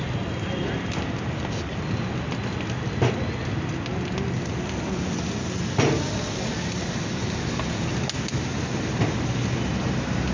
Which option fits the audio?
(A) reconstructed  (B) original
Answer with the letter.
B